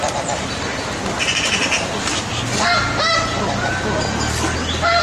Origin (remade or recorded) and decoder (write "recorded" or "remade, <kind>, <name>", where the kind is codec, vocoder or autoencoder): recorded